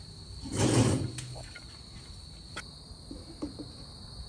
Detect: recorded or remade recorded